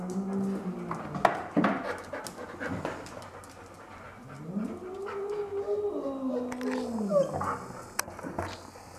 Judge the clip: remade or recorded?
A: recorded